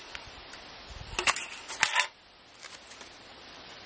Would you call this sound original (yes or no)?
yes